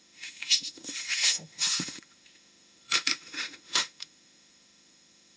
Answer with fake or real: fake